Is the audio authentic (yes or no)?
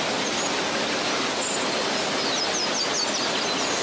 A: yes